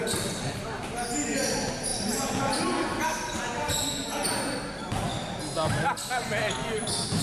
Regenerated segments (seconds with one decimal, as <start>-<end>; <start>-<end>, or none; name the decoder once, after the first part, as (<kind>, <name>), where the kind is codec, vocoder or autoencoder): none